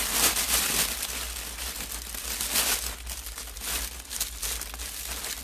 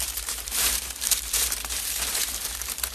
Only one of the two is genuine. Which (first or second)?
first